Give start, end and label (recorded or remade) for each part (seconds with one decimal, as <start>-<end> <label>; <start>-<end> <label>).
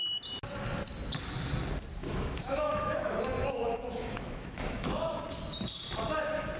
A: 0.0-2.0 recorded; 2.0-5.2 remade; 5.2-6.6 recorded